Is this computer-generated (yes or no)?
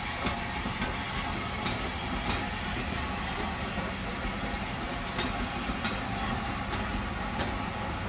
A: no